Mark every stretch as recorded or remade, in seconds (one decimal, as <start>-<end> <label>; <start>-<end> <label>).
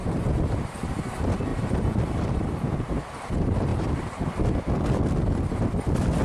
0.0-0.9 remade; 0.9-1.5 recorded; 1.5-3.0 remade; 3.0-6.2 recorded